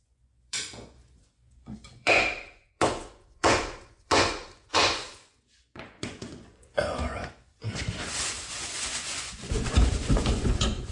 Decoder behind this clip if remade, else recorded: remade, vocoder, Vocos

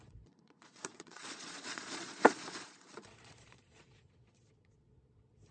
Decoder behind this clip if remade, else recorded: remade, vocoder, Vocos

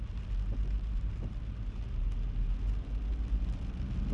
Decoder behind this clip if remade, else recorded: recorded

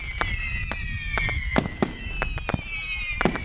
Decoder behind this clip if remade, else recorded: recorded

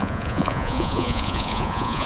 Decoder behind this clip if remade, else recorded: remade, vocoder, Vocos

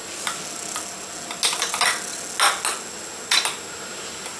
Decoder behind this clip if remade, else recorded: recorded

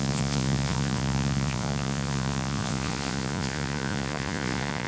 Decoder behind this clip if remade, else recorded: remade, vocoder, Vocos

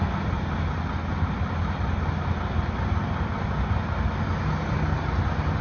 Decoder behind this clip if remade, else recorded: recorded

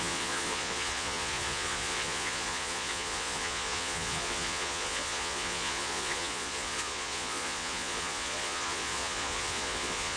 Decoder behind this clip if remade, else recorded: remade, vocoder, Vocos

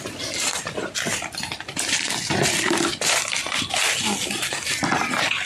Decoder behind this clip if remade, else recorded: recorded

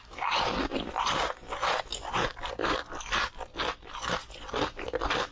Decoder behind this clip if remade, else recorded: recorded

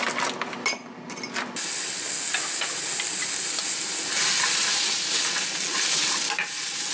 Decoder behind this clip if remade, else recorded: recorded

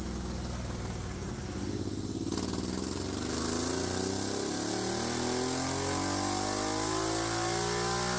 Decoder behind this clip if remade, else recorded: recorded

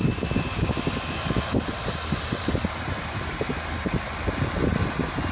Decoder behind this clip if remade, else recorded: recorded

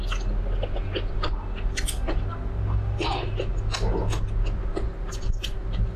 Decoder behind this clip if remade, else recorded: recorded